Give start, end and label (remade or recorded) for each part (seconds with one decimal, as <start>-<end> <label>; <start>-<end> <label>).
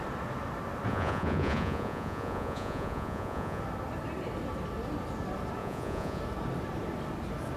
0.0-0.9 recorded; 0.9-3.6 remade; 3.6-5.6 recorded; 5.6-6.2 remade; 6.2-7.6 recorded